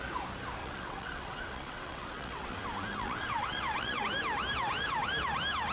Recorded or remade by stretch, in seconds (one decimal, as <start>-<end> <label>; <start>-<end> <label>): 0.0-0.6 recorded; 0.6-4.0 remade; 4.0-5.7 recorded

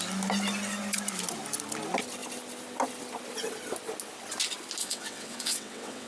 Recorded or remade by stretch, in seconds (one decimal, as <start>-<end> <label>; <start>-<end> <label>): 0.0-4.8 recorded; 4.8-6.1 remade

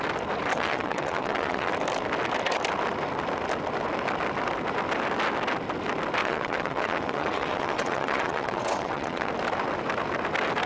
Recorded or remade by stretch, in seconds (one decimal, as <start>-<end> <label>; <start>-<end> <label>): 0.0-0.5 recorded; 0.5-1.7 remade; 1.7-6.2 recorded; 6.2-9.3 remade; 9.3-10.7 recorded